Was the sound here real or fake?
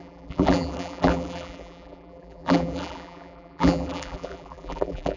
fake